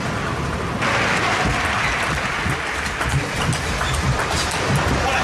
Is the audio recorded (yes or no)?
yes